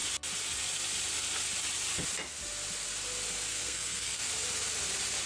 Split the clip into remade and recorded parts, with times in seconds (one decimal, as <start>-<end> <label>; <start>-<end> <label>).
0.0-3.5 recorded; 3.5-4.3 remade; 4.3-5.3 recorded